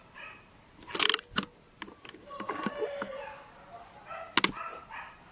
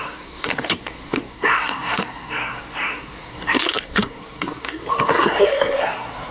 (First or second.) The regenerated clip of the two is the second